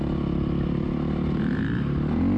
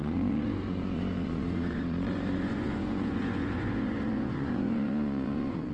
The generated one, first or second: second